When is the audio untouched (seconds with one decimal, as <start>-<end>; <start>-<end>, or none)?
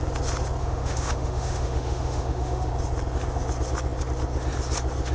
0.0-0.6; 2.7-5.1